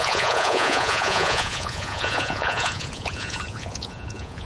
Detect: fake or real fake